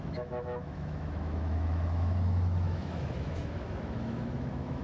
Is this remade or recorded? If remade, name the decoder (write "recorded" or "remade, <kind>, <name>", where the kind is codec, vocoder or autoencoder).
remade, autoencoder, DAC-VAE